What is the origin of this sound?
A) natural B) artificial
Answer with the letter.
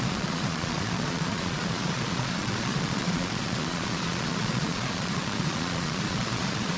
B